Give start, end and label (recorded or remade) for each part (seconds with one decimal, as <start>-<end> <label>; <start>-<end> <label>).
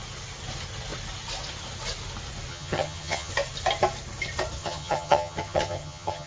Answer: 0.0-2.5 recorded; 2.5-3.3 remade; 3.3-4.6 recorded; 4.6-6.3 remade